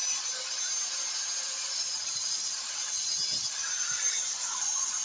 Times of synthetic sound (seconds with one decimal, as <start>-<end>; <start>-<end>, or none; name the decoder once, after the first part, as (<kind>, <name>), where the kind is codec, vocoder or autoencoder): 1.4-5.0 (vocoder, BigVGAN v2)